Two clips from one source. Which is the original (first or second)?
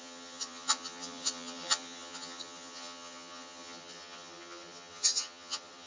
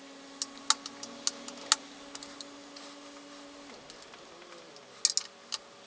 second